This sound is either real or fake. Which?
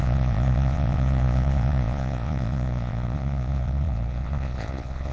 fake